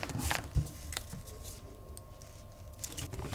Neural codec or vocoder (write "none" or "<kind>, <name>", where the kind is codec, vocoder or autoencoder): none